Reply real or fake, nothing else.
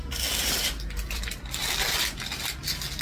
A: real